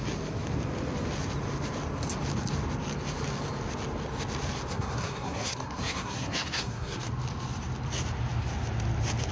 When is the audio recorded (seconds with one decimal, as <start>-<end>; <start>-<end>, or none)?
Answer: 0.0-4.7; 7.1-9.3